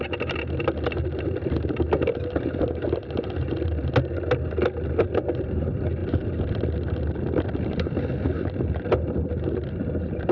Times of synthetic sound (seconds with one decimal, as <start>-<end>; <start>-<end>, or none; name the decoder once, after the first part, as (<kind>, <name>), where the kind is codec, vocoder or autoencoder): none